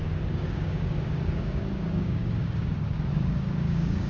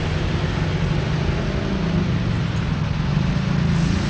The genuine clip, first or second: second